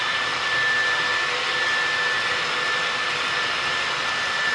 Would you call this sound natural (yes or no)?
yes